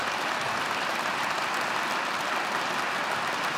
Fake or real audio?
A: real